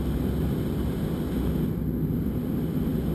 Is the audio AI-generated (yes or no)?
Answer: no